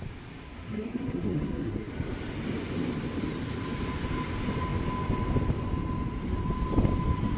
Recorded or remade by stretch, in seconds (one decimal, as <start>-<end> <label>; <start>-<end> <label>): 0.0-0.4 recorded; 0.4-1.9 remade; 1.9-7.4 recorded

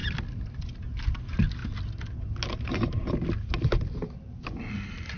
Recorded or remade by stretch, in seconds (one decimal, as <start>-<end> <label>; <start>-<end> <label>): 0.0-5.2 recorded